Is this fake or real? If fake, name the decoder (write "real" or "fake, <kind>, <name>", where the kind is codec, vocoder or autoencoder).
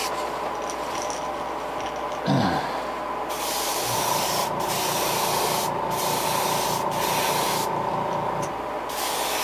real